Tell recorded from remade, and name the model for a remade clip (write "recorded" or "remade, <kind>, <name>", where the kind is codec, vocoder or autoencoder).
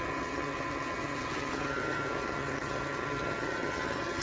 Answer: remade, vocoder, HiFi-GAN